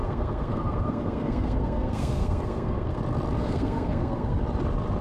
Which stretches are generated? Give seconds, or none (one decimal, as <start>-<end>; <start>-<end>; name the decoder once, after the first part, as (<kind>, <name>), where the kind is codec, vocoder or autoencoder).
0.0-3.0 (codec, SNAC); 3.4-4.4